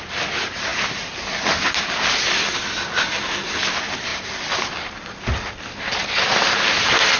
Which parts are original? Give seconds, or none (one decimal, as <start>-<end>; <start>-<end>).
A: 0.0-0.7; 1.7-4.1; 6.0-7.2